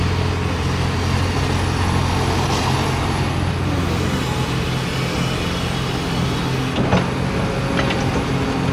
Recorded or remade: recorded